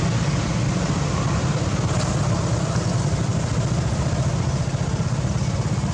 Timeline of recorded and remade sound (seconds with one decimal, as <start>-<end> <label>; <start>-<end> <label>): 0.0-5.9 recorded